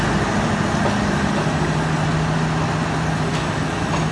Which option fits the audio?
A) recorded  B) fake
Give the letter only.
A